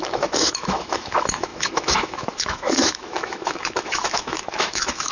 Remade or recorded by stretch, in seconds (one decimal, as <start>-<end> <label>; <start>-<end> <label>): 0.0-5.1 remade